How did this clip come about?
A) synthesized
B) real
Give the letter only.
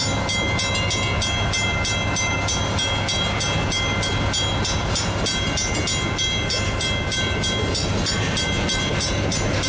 B